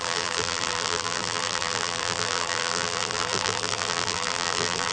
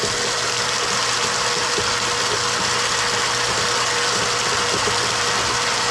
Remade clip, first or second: first